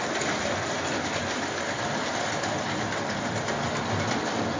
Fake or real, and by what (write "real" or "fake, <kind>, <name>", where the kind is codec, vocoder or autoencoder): real